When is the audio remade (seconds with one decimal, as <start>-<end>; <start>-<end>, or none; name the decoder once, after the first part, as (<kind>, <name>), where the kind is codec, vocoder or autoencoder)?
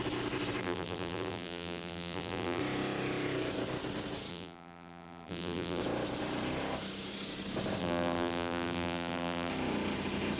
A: 0.6-2.6 (vocoder, BigVGAN v2); 4.3-5.8; 7.8-9.5